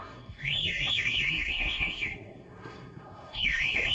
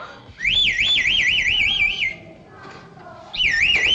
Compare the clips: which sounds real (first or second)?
second